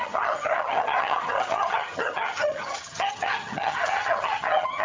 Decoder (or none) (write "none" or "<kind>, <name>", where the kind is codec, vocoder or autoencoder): vocoder, HiFi-GAN